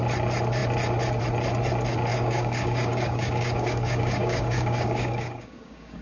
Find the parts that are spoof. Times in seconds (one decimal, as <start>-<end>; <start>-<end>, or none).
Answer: 2.1-6.0